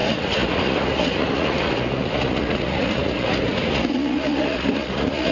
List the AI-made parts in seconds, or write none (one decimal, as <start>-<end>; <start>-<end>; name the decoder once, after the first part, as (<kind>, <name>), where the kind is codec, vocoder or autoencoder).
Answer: 0.0-5.3 (vocoder, Vocos)